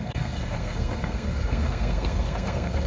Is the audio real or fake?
fake